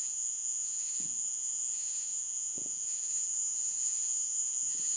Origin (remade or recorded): remade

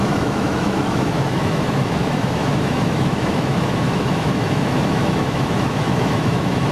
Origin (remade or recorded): remade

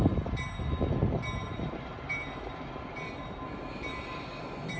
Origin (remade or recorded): recorded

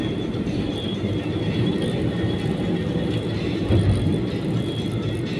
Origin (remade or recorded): recorded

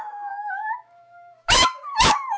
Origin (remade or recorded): remade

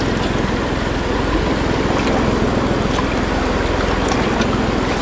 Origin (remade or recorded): recorded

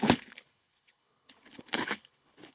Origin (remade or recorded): remade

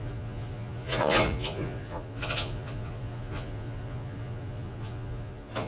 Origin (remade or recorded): remade